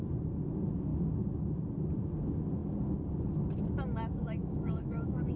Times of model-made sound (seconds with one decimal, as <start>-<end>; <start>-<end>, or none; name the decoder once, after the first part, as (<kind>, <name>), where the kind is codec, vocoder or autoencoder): 4.4-5.4 (autoencoder, DAC-VAE)